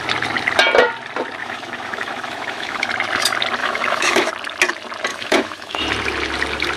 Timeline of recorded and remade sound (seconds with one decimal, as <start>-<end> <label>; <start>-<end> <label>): 0.0-1.4 recorded; 1.4-2.9 remade; 2.9-3.6 recorded; 3.6-4.3 remade; 4.3-5.1 recorded; 5.1-5.8 remade; 5.8-6.8 recorded